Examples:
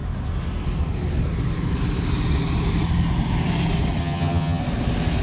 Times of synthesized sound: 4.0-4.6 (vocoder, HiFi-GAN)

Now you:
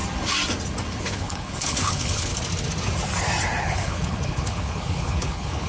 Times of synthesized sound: 0.9-2.3 (codec, HILCodec); 3.6-5.7

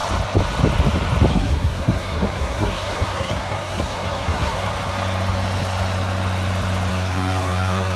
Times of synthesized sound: 1.3-4.7 (codec, SNAC); 6.9-8.0

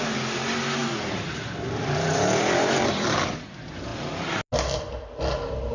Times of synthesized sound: 0.8-3.4 (vocoder, BigVGAN v2)

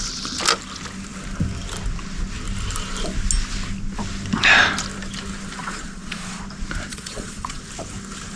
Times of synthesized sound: 5.6-6.4 (vocoder, Vocos); 6.9-7.6

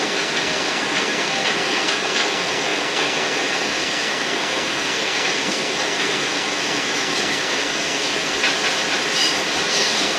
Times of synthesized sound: 0.0-8.4 (codec, SNAC); 9.7-10.2

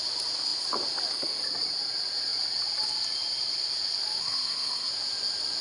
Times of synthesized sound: 4.2-4.9 (codec, SNAC)